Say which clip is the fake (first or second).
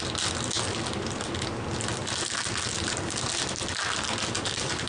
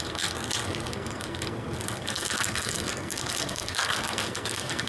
second